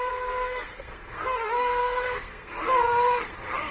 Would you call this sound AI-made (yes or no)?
yes